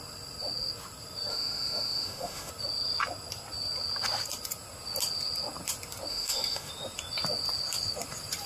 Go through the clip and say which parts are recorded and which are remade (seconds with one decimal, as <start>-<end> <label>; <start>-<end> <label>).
0.0-1.3 recorded; 1.3-2.5 remade; 2.5-6.1 recorded; 6.1-6.7 remade; 6.7-8.5 recorded